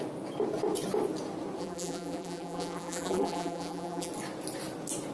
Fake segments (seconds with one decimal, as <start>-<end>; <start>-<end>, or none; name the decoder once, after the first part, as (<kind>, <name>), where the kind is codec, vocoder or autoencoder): 1.6-4.1 (vocoder, BigVGAN v2)